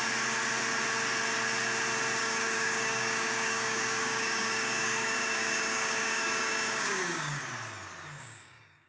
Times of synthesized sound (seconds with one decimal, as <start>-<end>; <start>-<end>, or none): 2.2-7.4; 8.2-8.9